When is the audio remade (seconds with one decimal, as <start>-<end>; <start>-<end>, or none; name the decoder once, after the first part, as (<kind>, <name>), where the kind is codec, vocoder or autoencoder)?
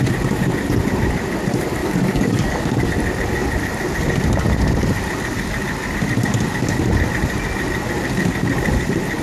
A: 1.8-2.9 (codec, DAC)